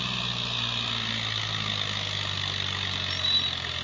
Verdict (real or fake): real